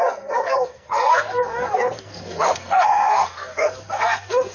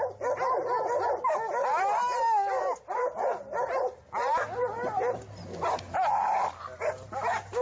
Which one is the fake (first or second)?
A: first